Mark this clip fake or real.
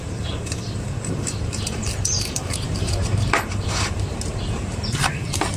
fake